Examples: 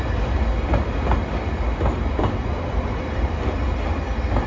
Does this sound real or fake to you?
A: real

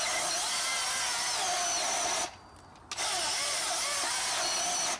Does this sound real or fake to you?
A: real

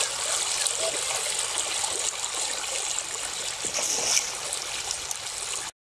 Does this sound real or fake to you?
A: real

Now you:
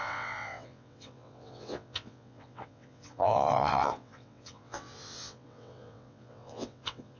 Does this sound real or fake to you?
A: fake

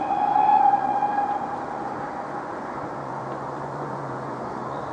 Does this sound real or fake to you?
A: fake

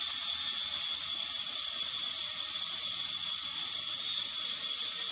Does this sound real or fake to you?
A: real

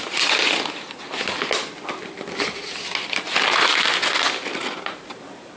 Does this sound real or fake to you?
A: real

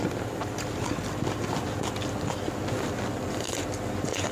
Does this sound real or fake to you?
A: real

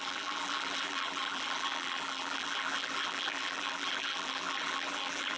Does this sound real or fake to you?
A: fake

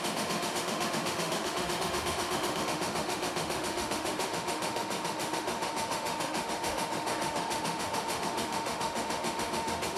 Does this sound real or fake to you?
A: fake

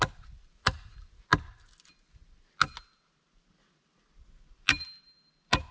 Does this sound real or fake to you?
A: real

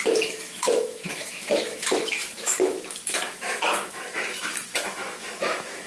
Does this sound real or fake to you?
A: fake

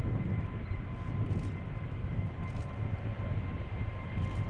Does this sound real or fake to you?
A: real